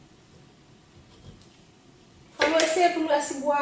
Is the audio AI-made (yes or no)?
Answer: no